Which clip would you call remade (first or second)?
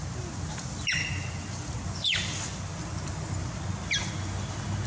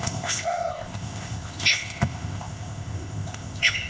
second